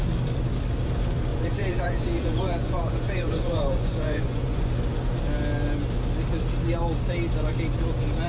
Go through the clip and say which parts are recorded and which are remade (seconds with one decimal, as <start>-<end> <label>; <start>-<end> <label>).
0.0-1.3 recorded; 1.3-4.7 remade; 4.7-8.3 recorded